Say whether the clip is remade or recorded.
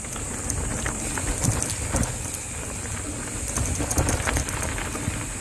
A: recorded